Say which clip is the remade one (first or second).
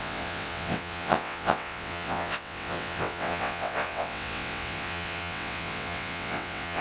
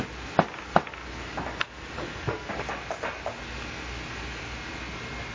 first